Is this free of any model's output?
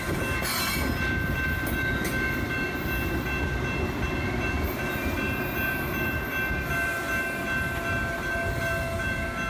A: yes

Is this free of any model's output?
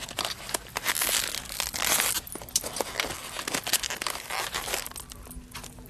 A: yes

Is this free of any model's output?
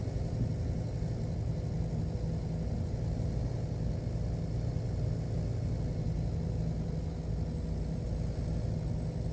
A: yes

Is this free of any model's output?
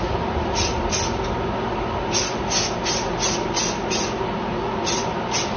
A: yes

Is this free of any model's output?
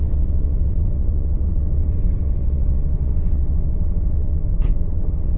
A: no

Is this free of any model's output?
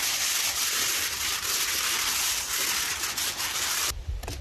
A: yes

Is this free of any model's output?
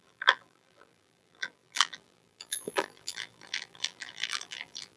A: no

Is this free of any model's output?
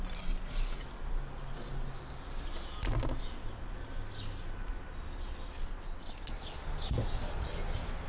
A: yes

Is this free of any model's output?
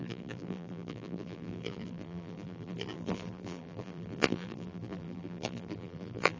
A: no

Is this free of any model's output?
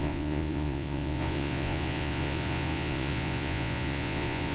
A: no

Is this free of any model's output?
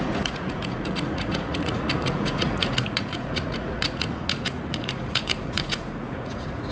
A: no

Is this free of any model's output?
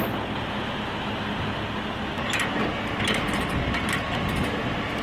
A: yes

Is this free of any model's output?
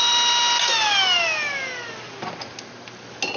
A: yes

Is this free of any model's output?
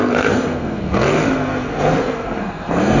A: no